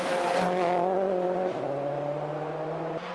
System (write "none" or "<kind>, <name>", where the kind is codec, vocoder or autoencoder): none